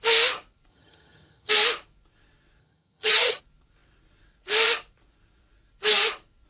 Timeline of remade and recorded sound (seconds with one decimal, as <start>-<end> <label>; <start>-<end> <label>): 0.0-0.7 recorded; 0.7-1.5 remade; 1.5-2.6 recorded; 2.6-3.4 remade; 3.4-6.5 recorded